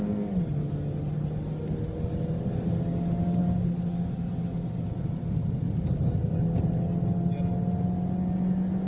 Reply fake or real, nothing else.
real